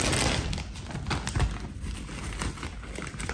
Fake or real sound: real